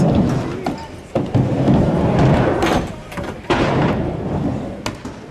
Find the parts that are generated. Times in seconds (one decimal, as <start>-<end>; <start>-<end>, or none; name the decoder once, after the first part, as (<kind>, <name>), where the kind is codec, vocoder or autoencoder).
3.0-4.1 (vocoder, BigVGAN v2)